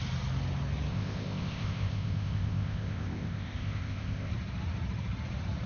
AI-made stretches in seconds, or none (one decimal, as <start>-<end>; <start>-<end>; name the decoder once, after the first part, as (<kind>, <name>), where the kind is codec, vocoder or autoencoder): 0.9-4.3 (codec, ZipCodec)